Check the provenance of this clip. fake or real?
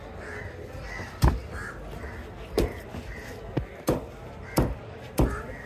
real